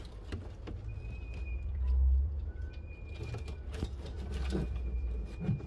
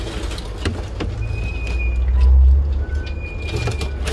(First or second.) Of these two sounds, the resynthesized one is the first